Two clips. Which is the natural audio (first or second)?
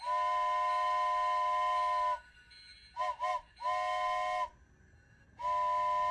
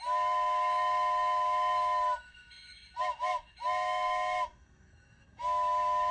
first